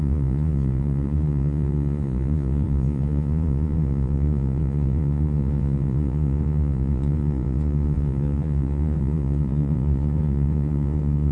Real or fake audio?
fake